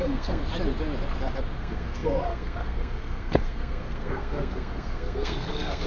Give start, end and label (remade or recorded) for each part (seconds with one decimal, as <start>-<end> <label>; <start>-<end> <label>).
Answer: 0.0-0.4 remade; 0.4-1.6 recorded; 1.6-5.9 remade